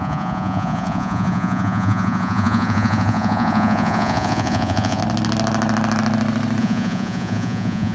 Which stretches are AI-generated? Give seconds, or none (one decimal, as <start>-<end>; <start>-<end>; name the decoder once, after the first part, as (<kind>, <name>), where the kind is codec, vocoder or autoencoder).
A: 0.0-5.0 (vocoder, Vocos); 6.6-7.9